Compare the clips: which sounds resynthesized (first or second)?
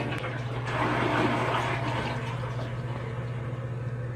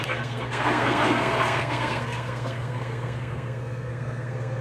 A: second